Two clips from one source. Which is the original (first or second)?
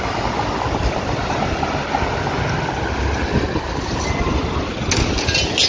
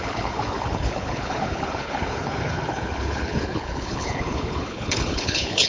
first